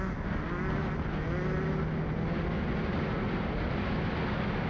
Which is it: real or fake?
real